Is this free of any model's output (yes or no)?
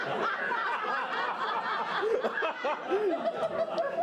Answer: yes